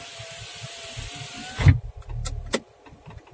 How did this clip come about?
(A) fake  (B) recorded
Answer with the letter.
B